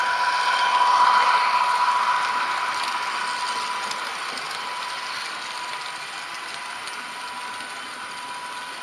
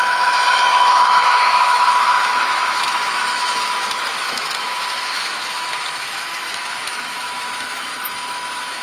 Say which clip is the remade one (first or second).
second